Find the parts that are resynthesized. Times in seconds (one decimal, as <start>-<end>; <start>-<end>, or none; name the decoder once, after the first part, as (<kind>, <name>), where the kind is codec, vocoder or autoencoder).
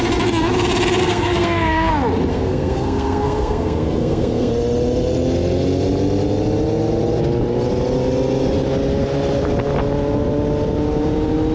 1.0-1.9 (codec, SNAC); 2.3-4.5